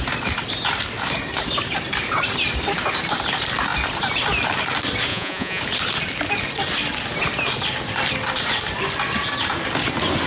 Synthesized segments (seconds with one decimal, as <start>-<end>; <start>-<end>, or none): 5.1-5.6